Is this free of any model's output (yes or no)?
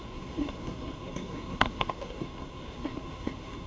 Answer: no